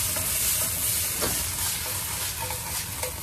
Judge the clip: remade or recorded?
recorded